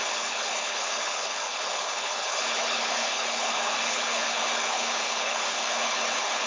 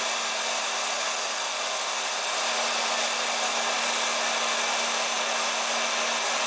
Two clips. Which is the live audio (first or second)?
second